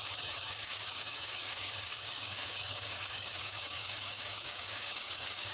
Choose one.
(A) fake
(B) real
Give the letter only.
A